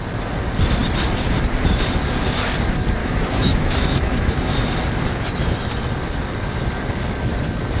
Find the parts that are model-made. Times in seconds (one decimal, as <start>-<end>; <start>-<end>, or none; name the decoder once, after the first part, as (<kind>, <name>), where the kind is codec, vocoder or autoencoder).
3.0-4.4 (autoencoder, DAC-VAE)